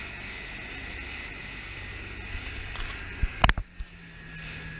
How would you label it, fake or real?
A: real